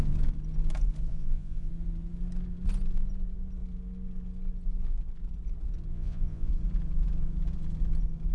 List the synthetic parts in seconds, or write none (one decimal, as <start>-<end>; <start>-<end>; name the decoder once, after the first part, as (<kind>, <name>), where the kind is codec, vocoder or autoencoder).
1.1-1.7 (vocoder, Vocos); 5.9-6.5